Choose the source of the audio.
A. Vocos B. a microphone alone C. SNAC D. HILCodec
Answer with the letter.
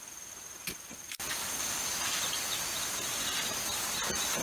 B